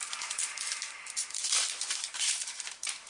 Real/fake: fake